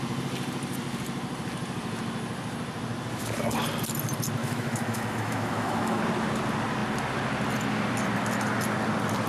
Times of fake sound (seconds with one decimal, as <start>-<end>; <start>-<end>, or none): 4.4-6.0